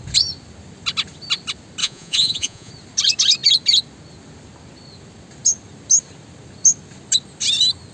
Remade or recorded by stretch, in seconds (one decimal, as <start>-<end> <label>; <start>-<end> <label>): 0.0-1.8 recorded; 1.8-2.7 remade; 2.7-7.9 recorded